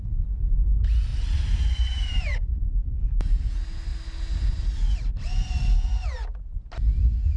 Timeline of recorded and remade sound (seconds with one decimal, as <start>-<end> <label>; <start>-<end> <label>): 0.0-1.1 recorded; 1.1-3.5 remade; 3.5-7.4 recorded